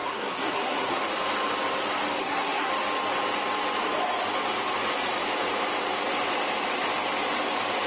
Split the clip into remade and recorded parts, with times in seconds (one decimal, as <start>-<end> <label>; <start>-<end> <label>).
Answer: 0.0-1.0 remade; 1.0-2.2 recorded; 2.2-2.7 remade; 2.7-7.9 recorded